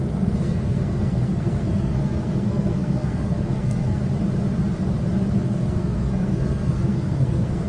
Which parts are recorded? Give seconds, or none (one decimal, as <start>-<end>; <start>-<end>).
4.0-5.4